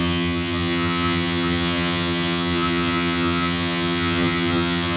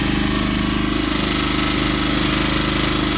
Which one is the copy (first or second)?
first